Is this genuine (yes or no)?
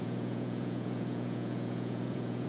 no